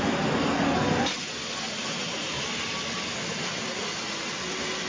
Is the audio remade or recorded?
recorded